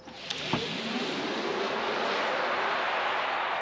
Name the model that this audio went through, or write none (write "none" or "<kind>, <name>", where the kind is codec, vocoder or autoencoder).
none